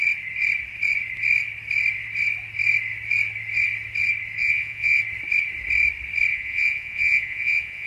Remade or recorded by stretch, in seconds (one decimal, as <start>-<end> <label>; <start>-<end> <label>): 0.0-4.4 recorded; 4.4-5.0 remade; 5.0-6.3 recorded; 6.3-7.9 remade